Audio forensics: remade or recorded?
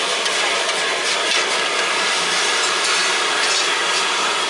recorded